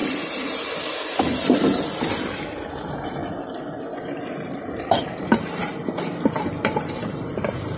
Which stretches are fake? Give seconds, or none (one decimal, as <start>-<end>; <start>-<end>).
1.2-3.2; 4.0-5.6; 6.3-7.8